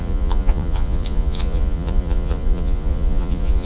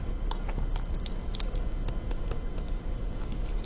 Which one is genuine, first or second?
second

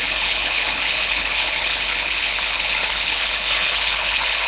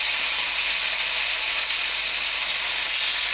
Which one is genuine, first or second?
second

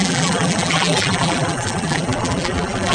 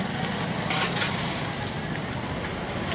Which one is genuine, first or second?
second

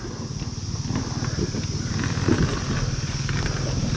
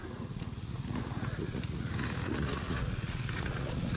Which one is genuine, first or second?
first